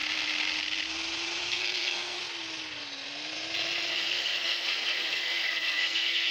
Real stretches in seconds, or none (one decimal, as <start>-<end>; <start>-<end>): 0.0-1.4; 2.2-3.9